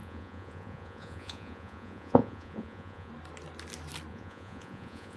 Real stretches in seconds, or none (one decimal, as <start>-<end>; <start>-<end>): 3.1-4.1